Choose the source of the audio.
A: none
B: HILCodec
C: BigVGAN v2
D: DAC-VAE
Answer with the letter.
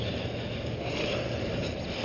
A